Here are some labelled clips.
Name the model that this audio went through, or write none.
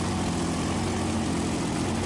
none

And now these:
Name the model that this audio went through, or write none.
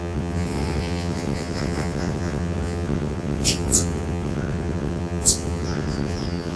vocoder, WaveNeXt